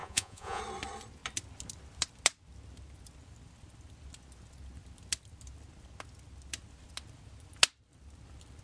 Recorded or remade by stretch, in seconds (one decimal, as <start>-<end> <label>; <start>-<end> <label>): 0.0-0.6 remade; 0.6-8.6 recorded